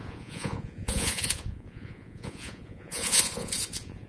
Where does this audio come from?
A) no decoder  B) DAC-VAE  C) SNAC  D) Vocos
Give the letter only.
D